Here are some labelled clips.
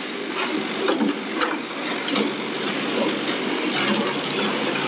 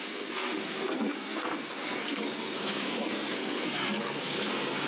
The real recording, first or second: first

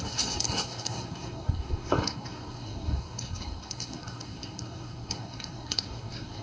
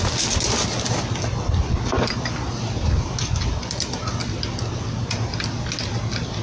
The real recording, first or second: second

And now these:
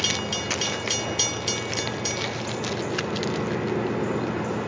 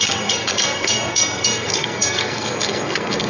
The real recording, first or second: first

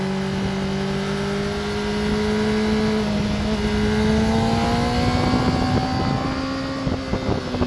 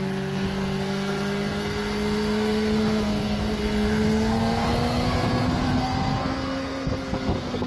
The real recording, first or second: first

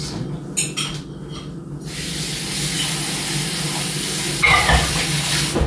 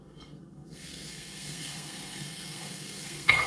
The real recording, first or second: first